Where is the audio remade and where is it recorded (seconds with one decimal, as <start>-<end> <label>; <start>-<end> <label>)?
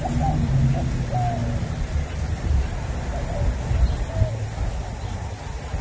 0.0-1.4 recorded; 1.4-3.0 remade; 3.0-5.8 recorded